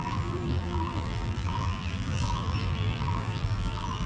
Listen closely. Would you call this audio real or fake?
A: fake